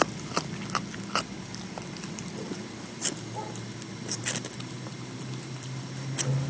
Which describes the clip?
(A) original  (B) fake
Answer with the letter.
A